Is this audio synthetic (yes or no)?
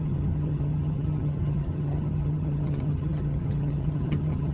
yes